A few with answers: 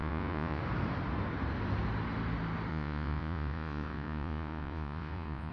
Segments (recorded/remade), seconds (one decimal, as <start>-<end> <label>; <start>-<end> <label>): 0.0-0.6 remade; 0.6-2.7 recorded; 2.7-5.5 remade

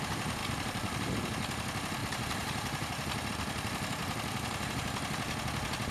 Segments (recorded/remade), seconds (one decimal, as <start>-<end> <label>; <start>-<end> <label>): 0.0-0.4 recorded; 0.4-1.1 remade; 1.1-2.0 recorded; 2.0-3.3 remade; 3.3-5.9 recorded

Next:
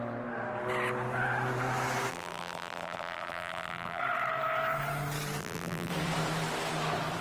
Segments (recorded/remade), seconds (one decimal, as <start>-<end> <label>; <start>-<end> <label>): 0.0-2.1 recorded; 2.1-4.0 remade; 4.0-5.4 recorded; 5.4-5.9 remade; 5.9-7.2 recorded

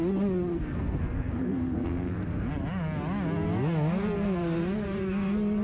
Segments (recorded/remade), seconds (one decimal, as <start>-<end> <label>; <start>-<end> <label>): 0.0-0.5 recorded; 0.5-2.1 remade; 2.1-5.6 recorded

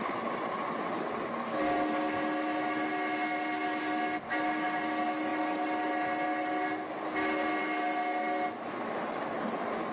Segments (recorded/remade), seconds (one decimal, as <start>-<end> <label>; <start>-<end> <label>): 0.0-9.9 recorded